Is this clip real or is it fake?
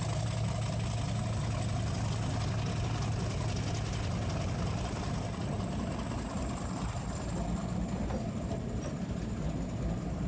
real